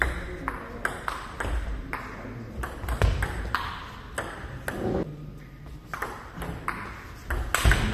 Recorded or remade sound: recorded